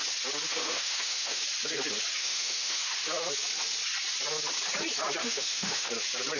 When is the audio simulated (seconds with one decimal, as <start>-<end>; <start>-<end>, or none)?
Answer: 0.5-1.4; 2.2-2.9; 5.2-5.9